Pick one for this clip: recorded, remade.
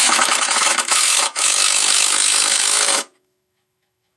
remade